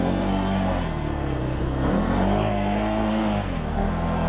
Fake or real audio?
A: fake